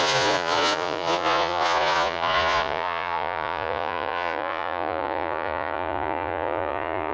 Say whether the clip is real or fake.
fake